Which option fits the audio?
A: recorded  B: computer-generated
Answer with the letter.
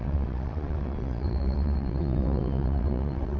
B